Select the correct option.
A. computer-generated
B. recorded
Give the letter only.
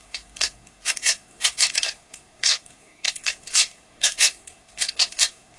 A